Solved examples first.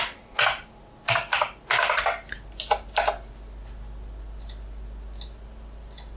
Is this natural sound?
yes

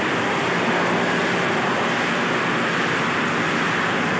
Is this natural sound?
yes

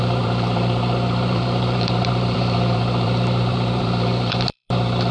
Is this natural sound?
no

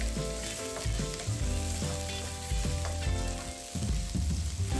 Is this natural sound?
yes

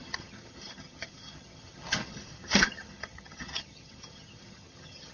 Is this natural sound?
no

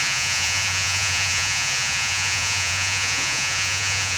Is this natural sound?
no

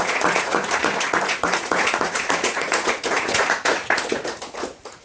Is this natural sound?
no